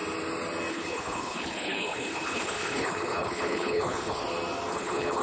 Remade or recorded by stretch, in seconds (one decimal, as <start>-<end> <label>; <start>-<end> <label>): 0.0-0.7 recorded; 0.7-4.2 remade; 4.2-4.7 recorded; 4.7-5.2 remade